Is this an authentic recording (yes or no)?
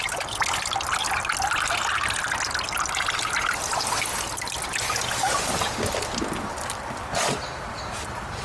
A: yes